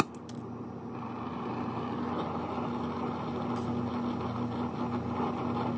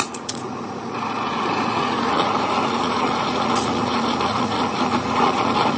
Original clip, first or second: first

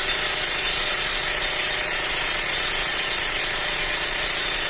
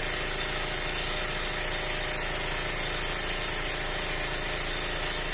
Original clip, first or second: second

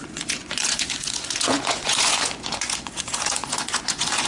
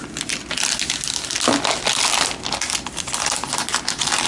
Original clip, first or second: second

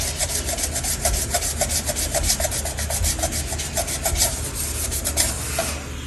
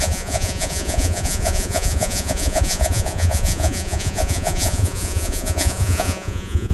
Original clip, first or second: first